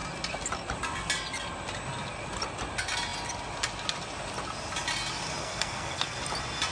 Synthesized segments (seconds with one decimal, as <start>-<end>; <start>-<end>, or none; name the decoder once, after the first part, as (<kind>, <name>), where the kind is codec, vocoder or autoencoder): 5.4-6.2 (codec, SNAC)